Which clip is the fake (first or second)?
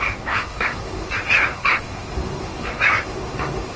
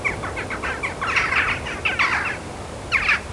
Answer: first